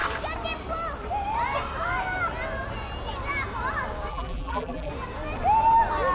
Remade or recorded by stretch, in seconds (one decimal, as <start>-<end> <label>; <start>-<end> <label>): 0.0-4.1 recorded; 4.1-4.9 remade; 4.9-6.1 recorded